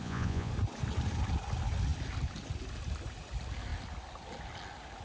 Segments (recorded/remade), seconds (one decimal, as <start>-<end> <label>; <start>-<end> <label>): 0.0-0.5 remade; 0.5-5.0 recorded